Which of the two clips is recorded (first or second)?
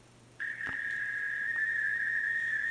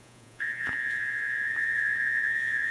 first